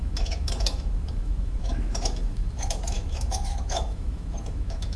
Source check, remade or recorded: remade